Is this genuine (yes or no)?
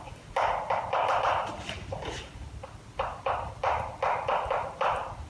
yes